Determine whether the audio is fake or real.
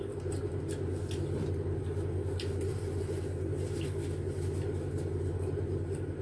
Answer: real